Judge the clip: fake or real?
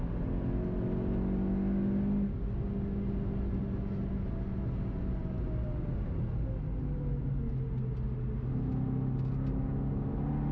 real